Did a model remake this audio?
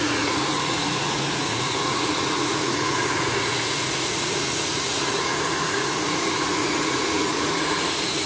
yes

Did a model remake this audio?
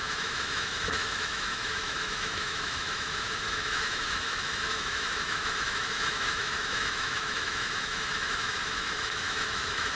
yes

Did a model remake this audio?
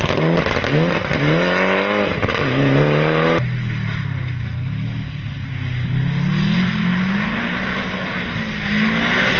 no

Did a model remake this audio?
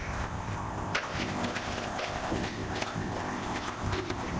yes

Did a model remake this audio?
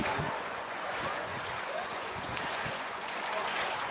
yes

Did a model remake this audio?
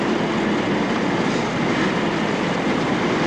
no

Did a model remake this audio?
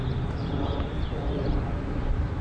no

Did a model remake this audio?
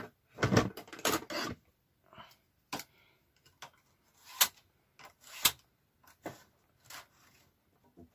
no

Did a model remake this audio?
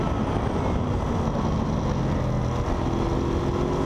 no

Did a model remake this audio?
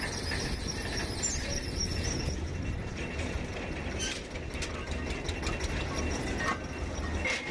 no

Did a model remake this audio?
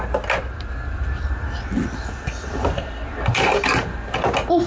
no